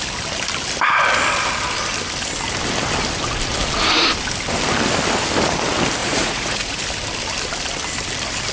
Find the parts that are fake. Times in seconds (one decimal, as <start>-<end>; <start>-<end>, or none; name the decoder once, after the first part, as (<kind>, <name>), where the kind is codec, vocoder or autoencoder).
6.0-6.8 (vocoder, Vocos)